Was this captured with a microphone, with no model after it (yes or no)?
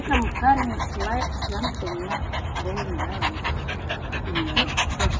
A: yes